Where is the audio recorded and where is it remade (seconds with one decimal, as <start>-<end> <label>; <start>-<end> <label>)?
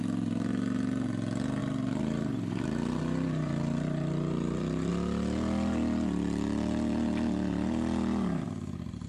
0.0-1.6 recorded; 1.6-4.9 remade; 4.9-9.1 recorded